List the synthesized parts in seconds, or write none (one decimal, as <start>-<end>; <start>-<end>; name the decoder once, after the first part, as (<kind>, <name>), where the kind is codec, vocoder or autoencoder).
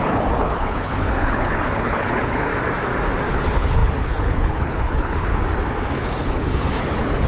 0.0-2.5 (codec, HILCodec); 3.3-5.3; 5.9-7.3